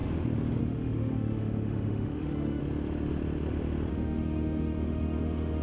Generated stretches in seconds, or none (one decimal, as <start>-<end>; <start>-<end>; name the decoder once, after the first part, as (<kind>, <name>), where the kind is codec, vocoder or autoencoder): 0.6-2.6 (autoencoder, DAC-VAE); 3.9-5.6